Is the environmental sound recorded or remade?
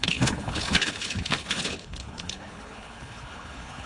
remade